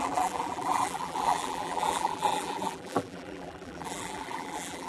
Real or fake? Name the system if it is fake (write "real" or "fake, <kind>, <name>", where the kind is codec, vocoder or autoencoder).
fake, vocoder, BigVGAN v2